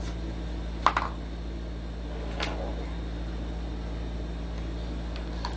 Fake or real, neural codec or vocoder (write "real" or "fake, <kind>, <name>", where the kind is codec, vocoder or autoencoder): real